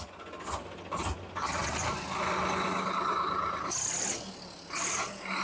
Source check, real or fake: real